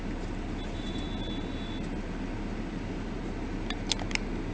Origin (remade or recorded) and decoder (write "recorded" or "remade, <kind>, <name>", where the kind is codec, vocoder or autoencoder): recorded